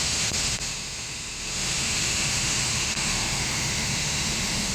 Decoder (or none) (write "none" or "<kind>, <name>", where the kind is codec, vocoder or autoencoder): autoencoder, DAC-VAE